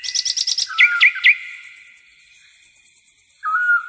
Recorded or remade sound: recorded